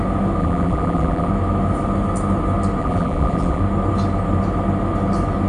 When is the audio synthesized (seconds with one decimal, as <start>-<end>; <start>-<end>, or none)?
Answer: 0.4-1.3; 2.8-3.6